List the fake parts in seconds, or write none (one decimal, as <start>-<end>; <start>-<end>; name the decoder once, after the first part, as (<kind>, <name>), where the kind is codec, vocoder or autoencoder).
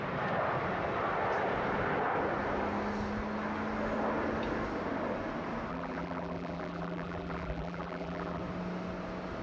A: 5.7-8.4 (vocoder, BigVGAN v2)